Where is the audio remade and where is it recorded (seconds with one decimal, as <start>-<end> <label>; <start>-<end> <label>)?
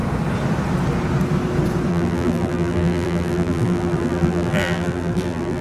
0.0-1.9 recorded; 1.9-5.6 remade